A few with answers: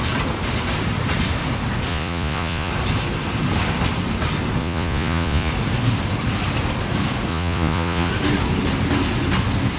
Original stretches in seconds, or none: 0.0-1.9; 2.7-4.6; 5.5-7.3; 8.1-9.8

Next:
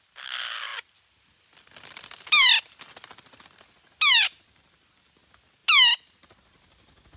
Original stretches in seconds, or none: 0.0-7.2

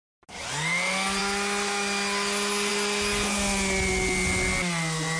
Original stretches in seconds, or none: 0.0-5.2